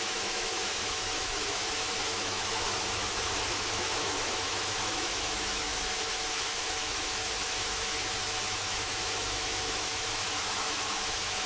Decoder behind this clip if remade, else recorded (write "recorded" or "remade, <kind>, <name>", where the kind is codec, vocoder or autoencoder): remade, autoencoder, DAC-VAE